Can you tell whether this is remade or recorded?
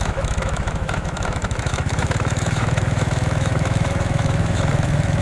remade